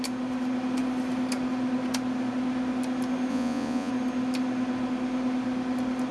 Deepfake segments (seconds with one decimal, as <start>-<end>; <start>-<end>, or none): 3.3-3.9